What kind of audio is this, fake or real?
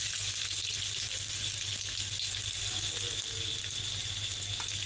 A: real